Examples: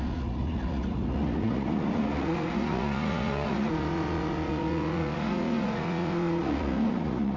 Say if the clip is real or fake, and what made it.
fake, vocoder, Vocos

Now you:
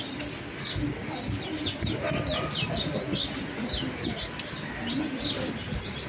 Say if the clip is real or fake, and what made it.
real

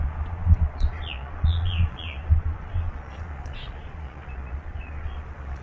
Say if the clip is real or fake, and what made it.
fake, vocoder, Vocos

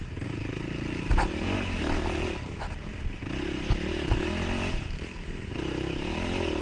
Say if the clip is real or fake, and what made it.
real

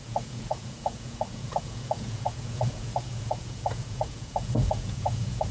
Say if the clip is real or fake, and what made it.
fake, vocoder, Vocos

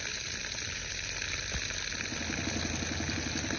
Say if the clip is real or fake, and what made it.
real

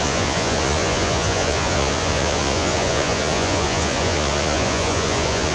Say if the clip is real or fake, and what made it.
fake, vocoder, Vocos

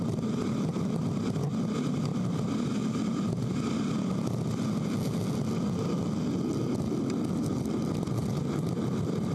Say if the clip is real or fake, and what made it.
real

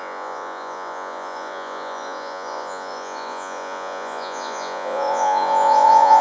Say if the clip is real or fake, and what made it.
fake, vocoder, Vocos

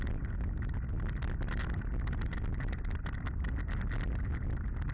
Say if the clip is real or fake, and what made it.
real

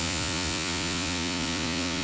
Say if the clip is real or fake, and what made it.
fake, vocoder, Vocos